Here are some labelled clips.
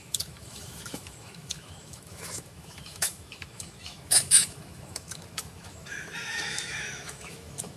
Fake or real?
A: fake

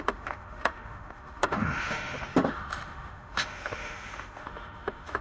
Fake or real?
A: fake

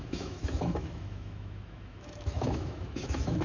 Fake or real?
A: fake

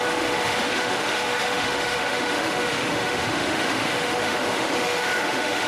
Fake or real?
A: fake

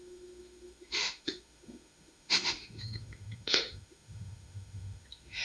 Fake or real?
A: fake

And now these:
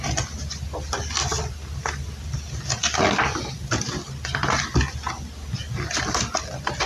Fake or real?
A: real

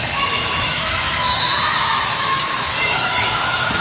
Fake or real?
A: fake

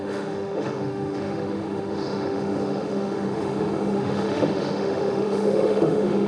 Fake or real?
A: fake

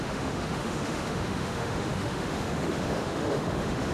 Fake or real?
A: fake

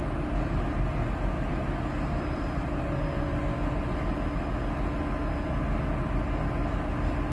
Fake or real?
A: real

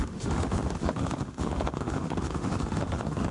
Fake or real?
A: fake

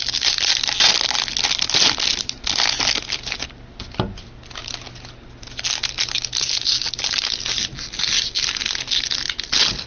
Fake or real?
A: real